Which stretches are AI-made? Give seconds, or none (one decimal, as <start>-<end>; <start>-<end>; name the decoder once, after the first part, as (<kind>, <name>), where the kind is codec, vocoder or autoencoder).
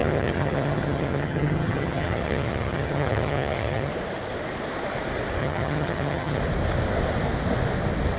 0.0-3.9 (vocoder, HiFi-GAN); 5.4-6.4